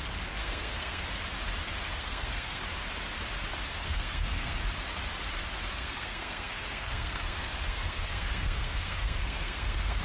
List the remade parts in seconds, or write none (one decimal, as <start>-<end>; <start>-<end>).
0.4-1.0; 1.9-2.6; 3.7-4.6; 5.7-10.0